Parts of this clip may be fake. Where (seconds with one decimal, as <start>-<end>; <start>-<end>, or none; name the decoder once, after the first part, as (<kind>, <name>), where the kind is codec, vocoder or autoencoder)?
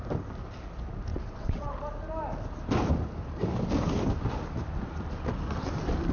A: 1.1-1.7 (vocoder, WaveNeXt)